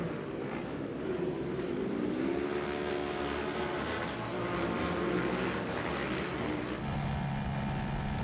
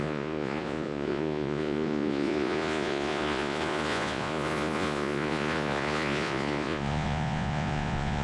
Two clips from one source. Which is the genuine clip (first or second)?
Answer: first